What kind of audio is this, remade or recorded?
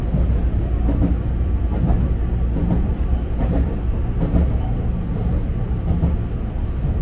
recorded